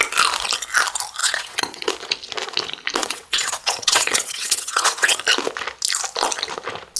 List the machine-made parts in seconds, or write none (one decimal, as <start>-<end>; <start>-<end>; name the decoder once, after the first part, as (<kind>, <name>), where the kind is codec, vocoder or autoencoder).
1.2-1.9 (vocoder, WaveNeXt); 3.0-5.2